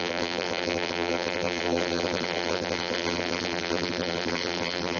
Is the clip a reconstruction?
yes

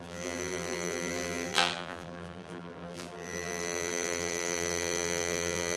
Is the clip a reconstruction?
yes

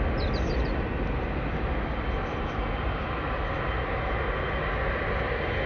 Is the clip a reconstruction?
no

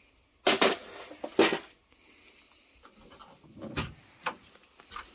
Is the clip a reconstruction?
no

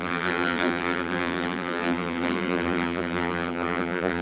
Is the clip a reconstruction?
yes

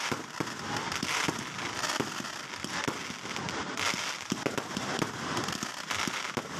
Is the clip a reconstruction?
no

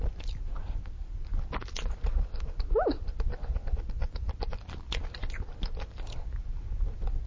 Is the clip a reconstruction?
no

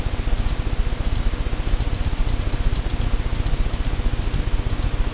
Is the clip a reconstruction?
no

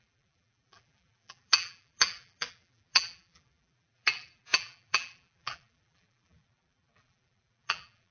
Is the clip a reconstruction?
yes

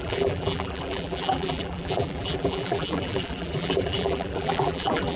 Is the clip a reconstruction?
yes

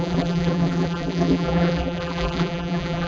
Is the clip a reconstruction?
yes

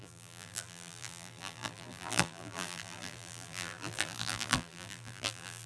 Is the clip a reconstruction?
yes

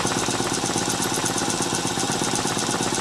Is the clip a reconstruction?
yes